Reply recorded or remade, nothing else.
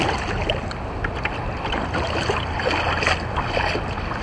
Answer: recorded